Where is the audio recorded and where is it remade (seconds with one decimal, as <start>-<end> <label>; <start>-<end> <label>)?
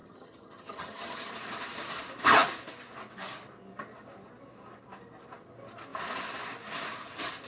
0.0-1.3 remade; 1.3-7.5 recorded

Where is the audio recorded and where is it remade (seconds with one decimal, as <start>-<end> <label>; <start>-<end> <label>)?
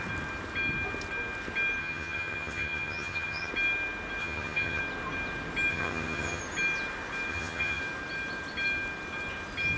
0.0-1.8 recorded; 1.8-3.5 remade; 3.5-4.2 recorded; 4.2-4.8 remade; 4.8-5.7 recorded; 5.7-6.4 remade; 6.4-7.3 recorded; 7.3-7.8 remade; 7.8-9.8 recorded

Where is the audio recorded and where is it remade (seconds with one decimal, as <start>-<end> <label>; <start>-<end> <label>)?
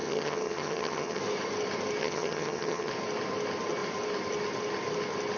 0.0-1.2 remade; 1.2-2.0 recorded; 2.0-2.9 remade; 2.9-5.4 recorded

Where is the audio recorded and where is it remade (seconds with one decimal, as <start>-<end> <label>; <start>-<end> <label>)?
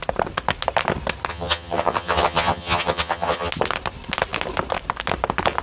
0.0-1.3 recorded; 1.3-3.5 remade; 3.5-5.6 recorded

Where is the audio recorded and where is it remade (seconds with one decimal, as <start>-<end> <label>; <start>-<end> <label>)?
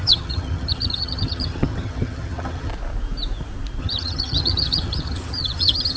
0.0-2.7 remade; 2.7-3.8 recorded; 3.8-6.0 remade